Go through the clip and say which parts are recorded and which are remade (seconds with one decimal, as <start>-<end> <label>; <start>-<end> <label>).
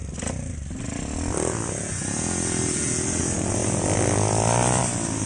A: 0.0-5.3 recorded